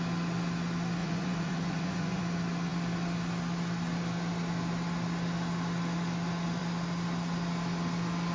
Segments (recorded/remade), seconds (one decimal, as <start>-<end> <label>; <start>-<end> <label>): 0.0-1.0 recorded; 1.0-2.2 remade; 2.2-8.3 recorded